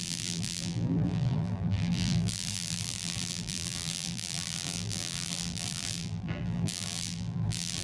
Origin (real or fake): fake